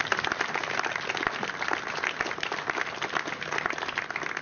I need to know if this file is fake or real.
real